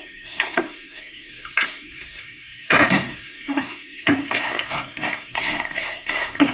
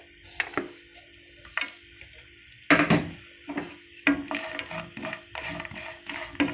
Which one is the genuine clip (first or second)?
second